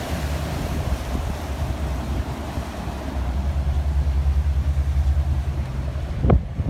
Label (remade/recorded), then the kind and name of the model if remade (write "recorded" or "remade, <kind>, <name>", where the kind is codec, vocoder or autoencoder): remade, vocoder, BigVGAN v2